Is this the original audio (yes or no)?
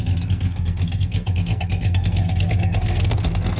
no